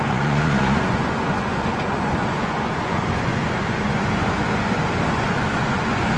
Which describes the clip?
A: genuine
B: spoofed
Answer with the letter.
B